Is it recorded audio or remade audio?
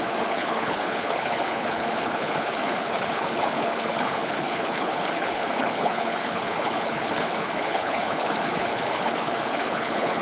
remade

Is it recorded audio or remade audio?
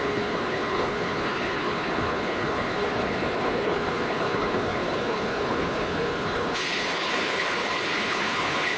remade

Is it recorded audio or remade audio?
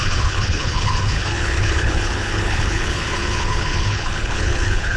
remade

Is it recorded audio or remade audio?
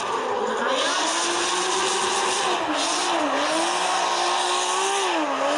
recorded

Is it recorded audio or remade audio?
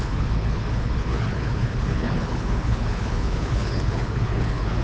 remade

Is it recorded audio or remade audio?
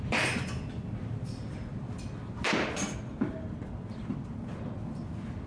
recorded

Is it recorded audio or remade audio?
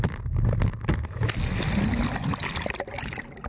recorded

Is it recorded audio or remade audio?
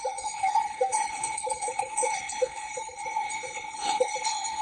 remade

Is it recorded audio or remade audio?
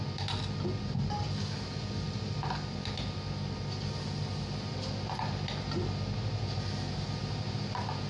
recorded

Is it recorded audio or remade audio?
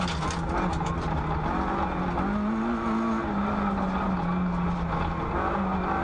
recorded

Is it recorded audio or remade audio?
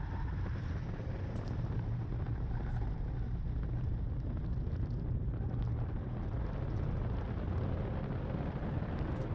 recorded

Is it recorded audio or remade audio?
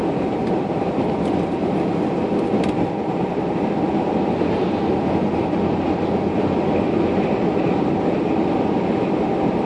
recorded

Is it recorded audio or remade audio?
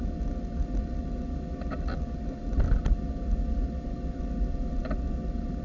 recorded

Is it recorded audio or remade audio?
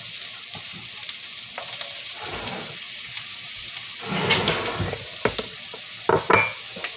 recorded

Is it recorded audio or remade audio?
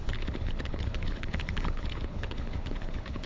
remade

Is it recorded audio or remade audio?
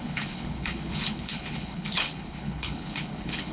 remade